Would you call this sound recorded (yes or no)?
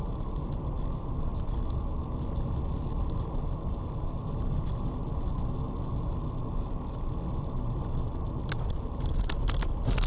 yes